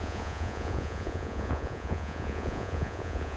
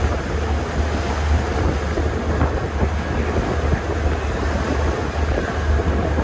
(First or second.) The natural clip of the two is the second